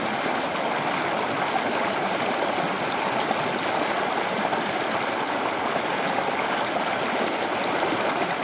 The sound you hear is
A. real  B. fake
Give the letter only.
A